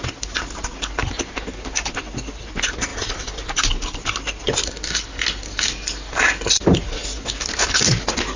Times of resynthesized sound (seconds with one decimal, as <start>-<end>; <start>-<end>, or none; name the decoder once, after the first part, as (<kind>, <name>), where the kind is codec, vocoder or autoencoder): none